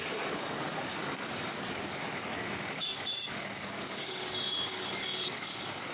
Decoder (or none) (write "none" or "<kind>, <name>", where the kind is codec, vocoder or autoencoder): codec, DAC